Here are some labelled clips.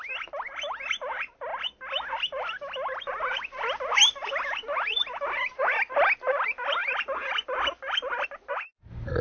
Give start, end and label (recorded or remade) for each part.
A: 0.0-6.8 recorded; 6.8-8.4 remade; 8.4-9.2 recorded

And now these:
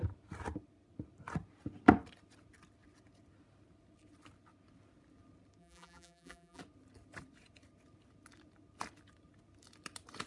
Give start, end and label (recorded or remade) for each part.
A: 0.0-5.6 recorded; 5.6-6.6 remade; 6.6-10.3 recorded